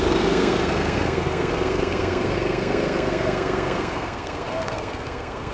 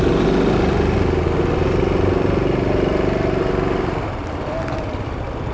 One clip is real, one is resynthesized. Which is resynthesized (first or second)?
first